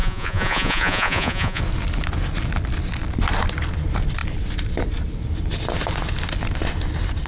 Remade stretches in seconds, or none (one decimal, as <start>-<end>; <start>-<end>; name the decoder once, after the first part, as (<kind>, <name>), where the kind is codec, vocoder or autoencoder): 0.0-1.6 (vocoder, Vocos)